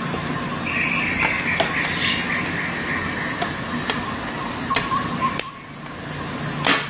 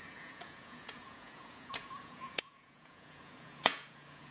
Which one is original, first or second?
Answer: first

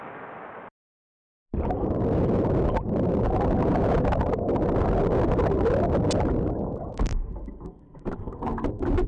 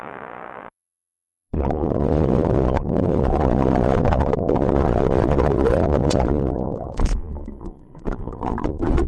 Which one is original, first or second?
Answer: first